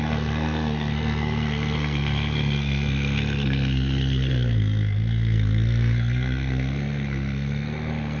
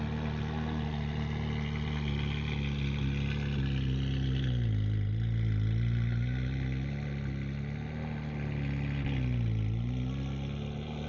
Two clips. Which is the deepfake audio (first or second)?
first